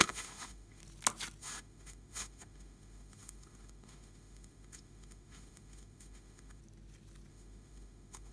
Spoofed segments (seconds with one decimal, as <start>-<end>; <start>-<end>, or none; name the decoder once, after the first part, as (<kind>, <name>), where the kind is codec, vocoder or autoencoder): 0.0-0.8 (autoencoder, DAC-VAE); 1.4-6.6; 7.3-8.3